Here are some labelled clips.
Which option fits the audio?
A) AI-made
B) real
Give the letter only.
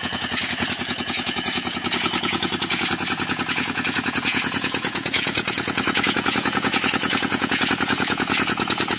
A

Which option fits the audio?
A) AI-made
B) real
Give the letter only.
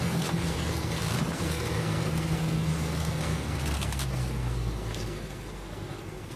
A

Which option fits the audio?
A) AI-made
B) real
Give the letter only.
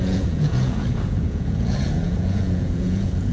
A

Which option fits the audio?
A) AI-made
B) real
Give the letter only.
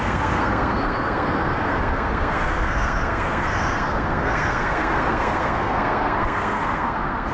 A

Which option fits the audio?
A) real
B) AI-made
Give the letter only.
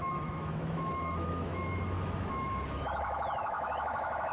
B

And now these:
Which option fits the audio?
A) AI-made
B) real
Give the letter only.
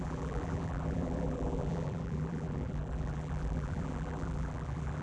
A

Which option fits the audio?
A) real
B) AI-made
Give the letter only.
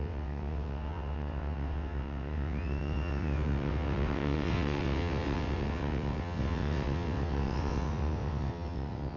B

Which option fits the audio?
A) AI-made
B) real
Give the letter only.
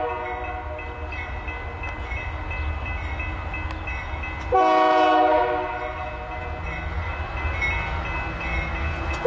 B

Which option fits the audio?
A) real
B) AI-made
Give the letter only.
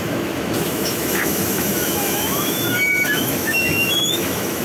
B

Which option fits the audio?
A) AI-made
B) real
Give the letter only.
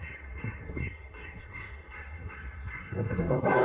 A